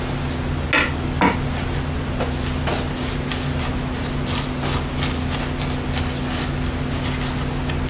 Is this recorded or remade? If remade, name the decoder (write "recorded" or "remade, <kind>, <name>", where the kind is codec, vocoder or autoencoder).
recorded